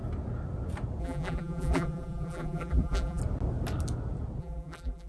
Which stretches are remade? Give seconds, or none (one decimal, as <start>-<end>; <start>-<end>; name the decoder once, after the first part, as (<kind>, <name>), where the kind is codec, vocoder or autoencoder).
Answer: 1.0-3.2 (vocoder, BigVGAN v2); 4.4-5.1